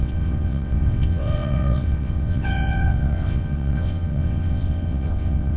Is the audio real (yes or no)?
no